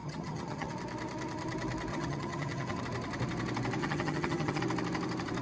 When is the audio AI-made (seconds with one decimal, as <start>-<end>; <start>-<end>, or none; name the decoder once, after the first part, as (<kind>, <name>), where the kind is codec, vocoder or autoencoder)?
0.0-0.7 (vocoder, HiFi-GAN); 1.9-2.8; 3.8-4.6